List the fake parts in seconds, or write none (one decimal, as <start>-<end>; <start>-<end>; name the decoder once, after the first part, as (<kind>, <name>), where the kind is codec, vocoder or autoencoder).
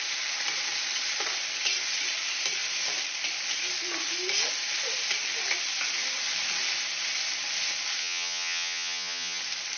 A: 8.0-9.4 (vocoder, HiFi-GAN)